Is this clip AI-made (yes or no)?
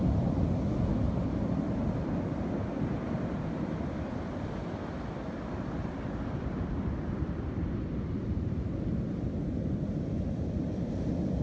no